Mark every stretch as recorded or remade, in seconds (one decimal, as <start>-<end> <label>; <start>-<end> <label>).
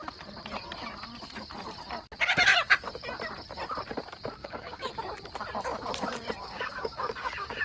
0.0-4.4 recorded; 4.4-4.9 remade; 4.9-6.4 recorded; 6.4-7.6 remade